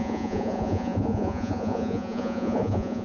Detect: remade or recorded remade